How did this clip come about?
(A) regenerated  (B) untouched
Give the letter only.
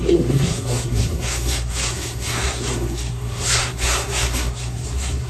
A